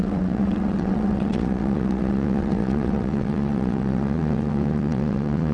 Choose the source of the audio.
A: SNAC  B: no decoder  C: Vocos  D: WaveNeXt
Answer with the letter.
D